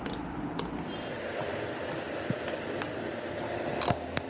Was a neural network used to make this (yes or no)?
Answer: no